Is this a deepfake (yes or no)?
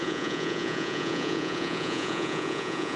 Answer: yes